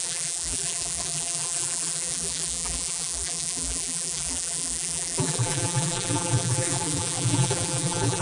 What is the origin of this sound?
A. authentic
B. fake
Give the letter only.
B